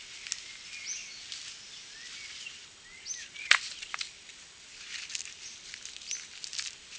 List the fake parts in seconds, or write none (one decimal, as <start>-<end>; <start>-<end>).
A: none